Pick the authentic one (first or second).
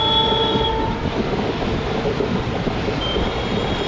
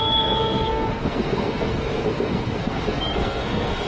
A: first